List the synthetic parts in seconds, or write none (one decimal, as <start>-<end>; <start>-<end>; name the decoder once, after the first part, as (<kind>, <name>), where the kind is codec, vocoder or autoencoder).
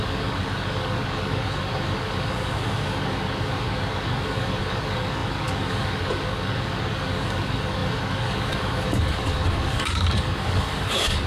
0.0-11.3 (codec, DAC)